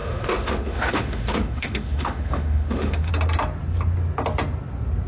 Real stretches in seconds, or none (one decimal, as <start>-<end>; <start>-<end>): 3.1-5.1